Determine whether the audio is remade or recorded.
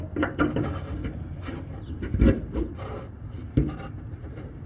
recorded